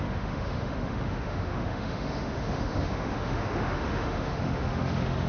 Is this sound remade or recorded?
remade